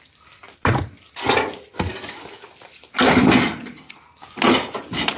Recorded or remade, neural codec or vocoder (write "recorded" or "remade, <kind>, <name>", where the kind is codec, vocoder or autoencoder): recorded